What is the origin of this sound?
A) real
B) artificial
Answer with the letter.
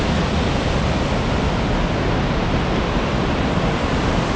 A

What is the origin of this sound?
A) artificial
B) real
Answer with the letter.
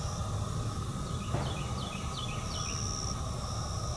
B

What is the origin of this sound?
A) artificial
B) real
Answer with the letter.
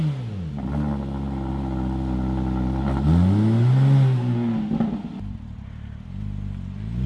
B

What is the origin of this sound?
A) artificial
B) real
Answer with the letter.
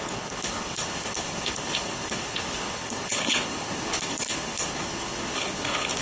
A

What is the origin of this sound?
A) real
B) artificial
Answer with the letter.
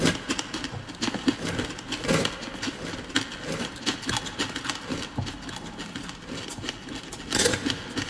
A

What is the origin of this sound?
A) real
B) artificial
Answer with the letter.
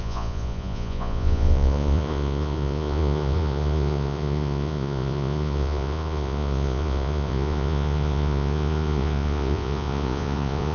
B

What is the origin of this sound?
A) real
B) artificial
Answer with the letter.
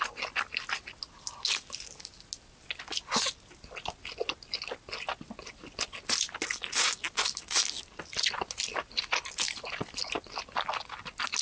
A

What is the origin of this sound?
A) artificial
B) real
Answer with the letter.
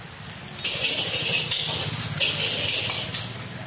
B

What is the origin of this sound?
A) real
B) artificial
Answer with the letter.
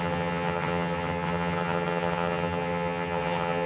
B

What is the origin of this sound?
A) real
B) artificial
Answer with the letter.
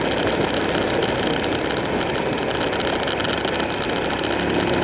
A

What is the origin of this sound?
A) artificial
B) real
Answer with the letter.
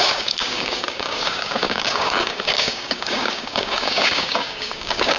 A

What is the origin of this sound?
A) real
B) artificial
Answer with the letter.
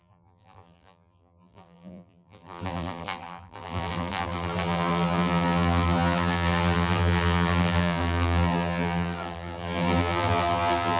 B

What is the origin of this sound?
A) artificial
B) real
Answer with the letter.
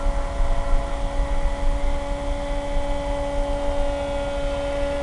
B